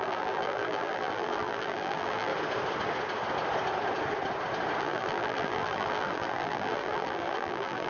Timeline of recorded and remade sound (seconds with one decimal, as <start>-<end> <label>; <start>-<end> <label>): 0.0-2.3 remade; 2.3-4.8 recorded; 4.8-7.9 remade